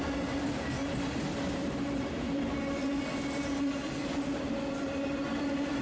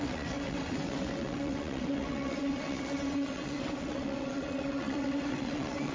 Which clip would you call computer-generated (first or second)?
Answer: second